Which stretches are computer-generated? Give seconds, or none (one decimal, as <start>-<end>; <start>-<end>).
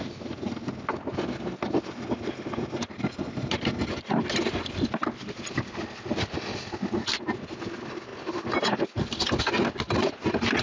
none